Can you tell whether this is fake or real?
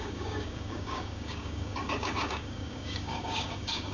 fake